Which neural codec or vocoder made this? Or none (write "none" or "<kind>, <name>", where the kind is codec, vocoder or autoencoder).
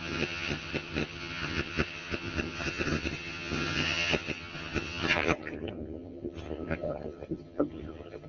vocoder, HiFi-GAN